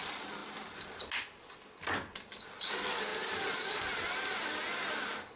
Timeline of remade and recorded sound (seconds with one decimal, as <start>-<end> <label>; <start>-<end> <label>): 0.0-5.4 recorded